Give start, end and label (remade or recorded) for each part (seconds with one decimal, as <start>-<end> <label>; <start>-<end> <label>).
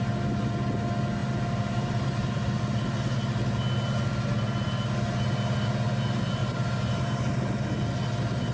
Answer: 0.0-1.2 recorded; 1.2-2.6 remade; 2.6-6.4 recorded; 6.4-7.6 remade; 7.6-8.5 recorded